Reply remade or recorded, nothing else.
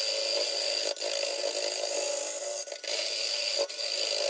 recorded